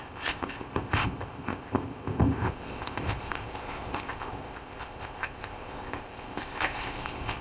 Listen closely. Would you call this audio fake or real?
fake